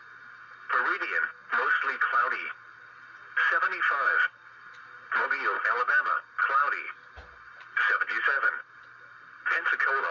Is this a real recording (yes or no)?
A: yes